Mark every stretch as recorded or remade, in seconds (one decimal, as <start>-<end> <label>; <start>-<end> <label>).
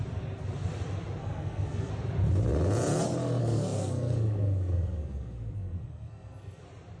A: 0.0-1.2 recorded; 1.2-1.9 remade; 1.9-3.4 recorded; 3.4-6.6 remade; 6.6-7.0 recorded